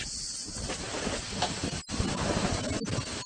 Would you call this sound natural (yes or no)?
yes